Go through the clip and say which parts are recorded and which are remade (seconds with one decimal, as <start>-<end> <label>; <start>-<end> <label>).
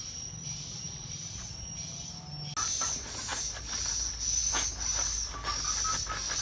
0.0-6.4 recorded